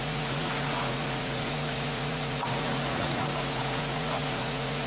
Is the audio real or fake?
fake